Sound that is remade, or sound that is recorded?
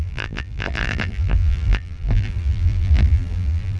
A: remade